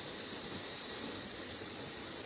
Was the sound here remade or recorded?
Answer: recorded